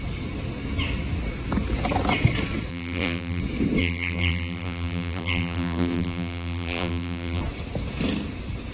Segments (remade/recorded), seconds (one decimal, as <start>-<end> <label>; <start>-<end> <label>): 0.0-2.7 recorded; 2.7-3.4 remade; 3.4-3.8 recorded; 3.8-7.4 remade; 7.4-8.7 recorded